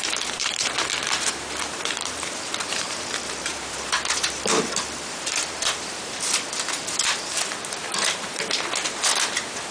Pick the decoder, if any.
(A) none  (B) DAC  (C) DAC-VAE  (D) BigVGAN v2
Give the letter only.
D